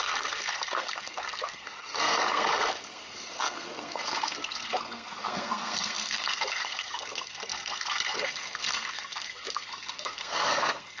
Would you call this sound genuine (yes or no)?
no